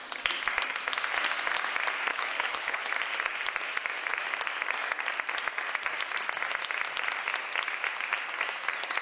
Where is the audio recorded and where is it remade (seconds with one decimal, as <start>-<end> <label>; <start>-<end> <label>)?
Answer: 0.0-2.1 recorded; 2.1-2.9 remade; 2.9-9.0 recorded